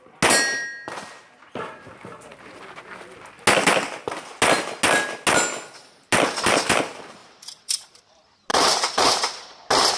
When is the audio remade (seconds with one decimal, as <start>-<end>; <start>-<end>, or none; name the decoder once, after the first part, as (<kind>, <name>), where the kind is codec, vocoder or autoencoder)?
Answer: 7.2-8.0 (vocoder, BigVGAN v2); 8.5-9.1